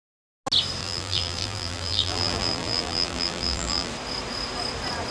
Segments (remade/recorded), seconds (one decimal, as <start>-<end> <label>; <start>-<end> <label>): 0.0-0.8 recorded; 0.8-3.9 remade; 3.9-5.1 recorded